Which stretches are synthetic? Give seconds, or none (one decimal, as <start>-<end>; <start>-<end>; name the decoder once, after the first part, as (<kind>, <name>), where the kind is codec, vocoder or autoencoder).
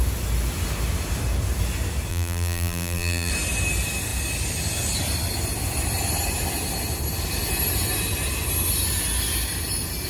2.1-3.3 (vocoder, BigVGAN v2)